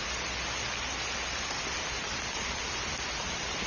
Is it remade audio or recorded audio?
recorded